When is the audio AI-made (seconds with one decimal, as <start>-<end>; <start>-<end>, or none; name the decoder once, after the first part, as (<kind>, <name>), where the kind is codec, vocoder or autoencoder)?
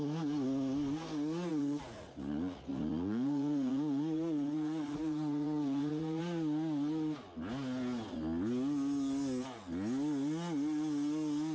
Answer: 1.5-6.2 (vocoder, Vocos)